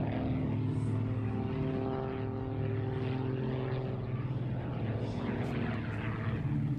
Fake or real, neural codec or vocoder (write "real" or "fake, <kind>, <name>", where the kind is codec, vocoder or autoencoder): real